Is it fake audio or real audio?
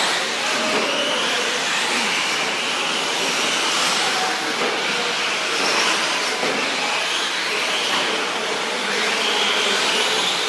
real